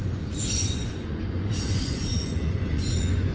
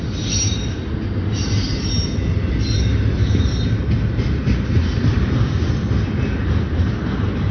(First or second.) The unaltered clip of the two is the second